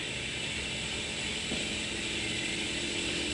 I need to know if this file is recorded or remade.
recorded